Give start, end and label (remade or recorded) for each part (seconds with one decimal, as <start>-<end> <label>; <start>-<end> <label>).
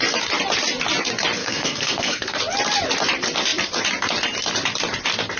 0.0-1.4 recorded; 1.4-2.4 remade; 2.4-5.4 recorded